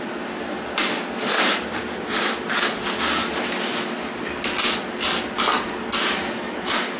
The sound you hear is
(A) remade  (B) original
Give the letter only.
B